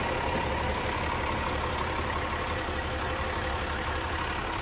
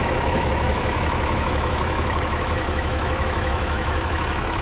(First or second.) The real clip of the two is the first